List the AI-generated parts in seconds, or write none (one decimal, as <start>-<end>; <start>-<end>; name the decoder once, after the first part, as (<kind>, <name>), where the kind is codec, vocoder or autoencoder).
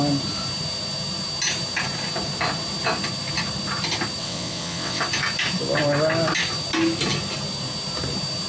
4.2-5.0 (vocoder, WaveNeXt)